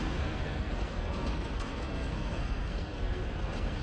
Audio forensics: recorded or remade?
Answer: remade